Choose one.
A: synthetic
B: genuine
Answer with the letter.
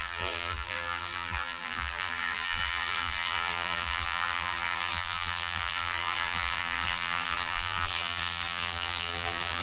A